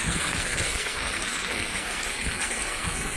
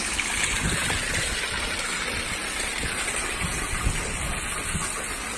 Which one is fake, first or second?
first